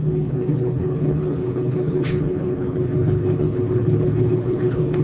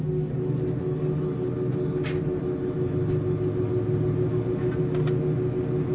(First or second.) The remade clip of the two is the first